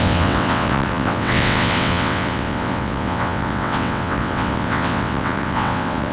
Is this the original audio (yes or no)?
no